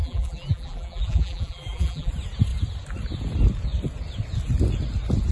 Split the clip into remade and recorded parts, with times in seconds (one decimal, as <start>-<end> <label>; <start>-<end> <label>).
0.0-2.1 remade; 2.1-5.3 recorded